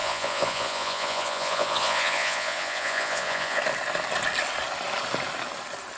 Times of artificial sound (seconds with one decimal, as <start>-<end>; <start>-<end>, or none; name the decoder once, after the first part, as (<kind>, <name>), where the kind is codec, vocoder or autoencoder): 0.0-3.6 (vocoder, Vocos)